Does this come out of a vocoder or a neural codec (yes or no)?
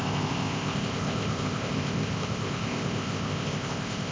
yes